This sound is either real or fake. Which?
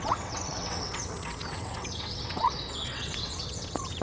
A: fake